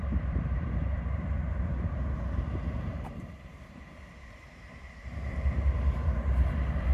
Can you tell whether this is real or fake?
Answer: fake